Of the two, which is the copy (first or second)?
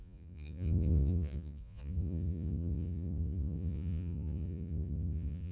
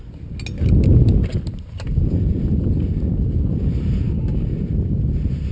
first